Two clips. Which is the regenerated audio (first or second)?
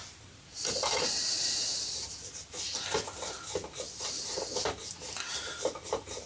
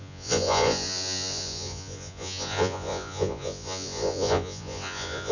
second